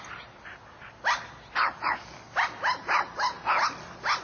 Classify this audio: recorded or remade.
recorded